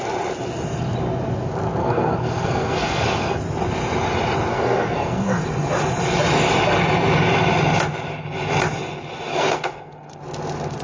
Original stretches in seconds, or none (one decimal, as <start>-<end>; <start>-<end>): 0.0-1.8; 3.4-4.5; 5.4-9.3; 10.2-10.8